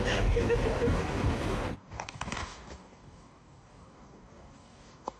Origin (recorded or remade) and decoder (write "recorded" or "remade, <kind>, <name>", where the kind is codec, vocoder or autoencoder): remade, codec, DAC